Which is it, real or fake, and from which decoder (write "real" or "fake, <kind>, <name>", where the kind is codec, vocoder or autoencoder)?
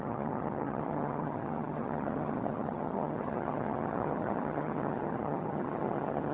fake, vocoder, HiFi-GAN